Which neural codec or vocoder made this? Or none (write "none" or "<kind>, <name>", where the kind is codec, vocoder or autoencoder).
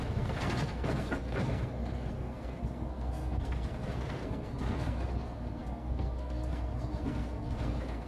codec, SNAC